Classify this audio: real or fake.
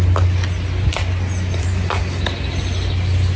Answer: real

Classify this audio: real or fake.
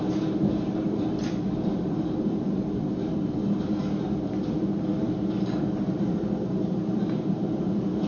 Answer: fake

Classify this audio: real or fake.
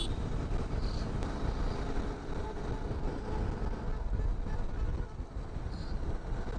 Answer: real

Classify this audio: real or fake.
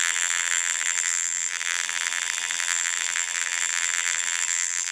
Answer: fake